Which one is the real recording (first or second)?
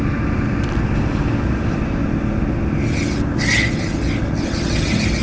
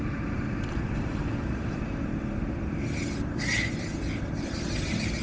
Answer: first